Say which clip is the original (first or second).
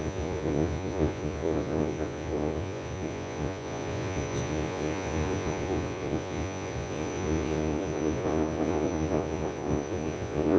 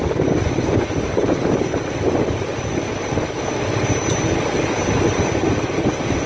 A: second